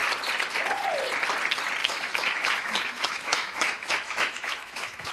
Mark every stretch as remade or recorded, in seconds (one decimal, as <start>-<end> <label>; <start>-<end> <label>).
0.0-1.8 recorded; 1.8-5.1 remade